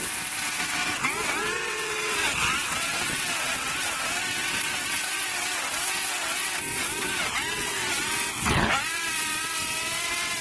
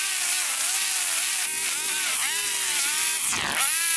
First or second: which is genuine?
second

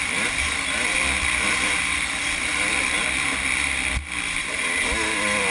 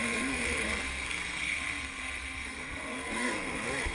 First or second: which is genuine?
first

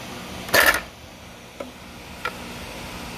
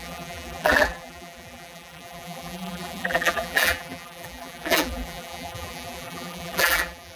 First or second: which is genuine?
first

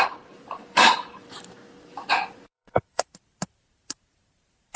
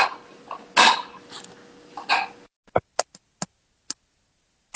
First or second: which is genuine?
second